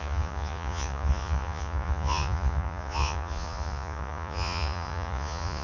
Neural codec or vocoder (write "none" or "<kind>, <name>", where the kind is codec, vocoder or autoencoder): vocoder, Vocos